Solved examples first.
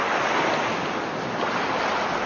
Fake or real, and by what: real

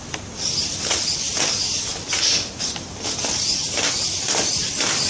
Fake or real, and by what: real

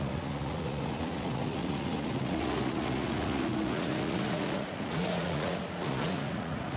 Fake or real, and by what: fake, vocoder, Vocos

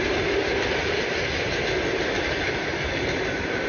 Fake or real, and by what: real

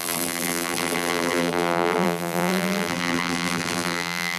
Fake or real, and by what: fake, vocoder, BigVGAN v2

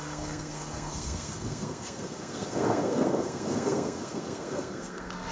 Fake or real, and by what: fake, codec, SNAC